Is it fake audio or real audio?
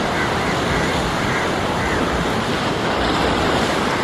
real